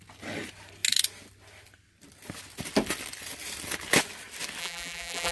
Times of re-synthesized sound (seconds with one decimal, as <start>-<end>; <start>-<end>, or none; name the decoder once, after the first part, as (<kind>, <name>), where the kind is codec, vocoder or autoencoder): 4.6-5.3 (vocoder, BigVGAN v2)